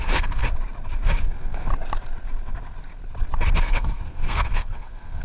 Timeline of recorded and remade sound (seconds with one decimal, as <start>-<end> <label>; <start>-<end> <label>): 0.0-0.4 remade; 0.4-1.2 recorded; 1.2-1.7 remade; 1.7-3.6 recorded; 3.6-5.2 remade